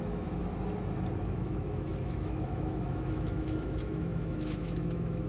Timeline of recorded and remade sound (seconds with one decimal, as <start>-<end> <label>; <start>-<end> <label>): 0.0-0.4 remade; 0.4-1.2 recorded; 1.2-5.3 remade